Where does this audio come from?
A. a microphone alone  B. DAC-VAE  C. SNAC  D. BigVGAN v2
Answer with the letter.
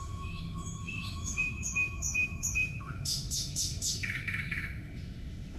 B